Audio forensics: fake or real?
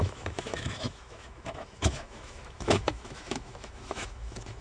fake